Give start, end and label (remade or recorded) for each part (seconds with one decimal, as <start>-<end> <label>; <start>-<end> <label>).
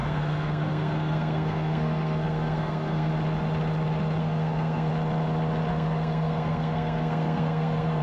0.0-3.1 remade; 3.1-4.2 recorded; 4.2-4.9 remade; 4.9-5.7 recorded; 5.7-8.0 remade